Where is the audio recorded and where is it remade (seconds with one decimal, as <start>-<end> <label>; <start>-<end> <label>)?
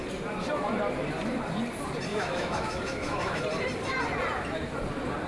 0.0-2.1 recorded; 2.1-3.4 remade; 3.4-5.3 recorded